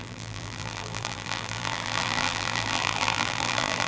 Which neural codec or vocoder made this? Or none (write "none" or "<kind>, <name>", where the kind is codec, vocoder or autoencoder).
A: vocoder, BigVGAN v2